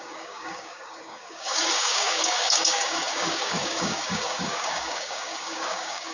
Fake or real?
fake